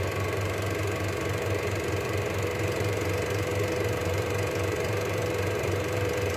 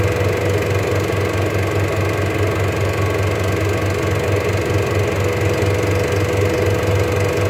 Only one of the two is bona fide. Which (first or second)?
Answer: second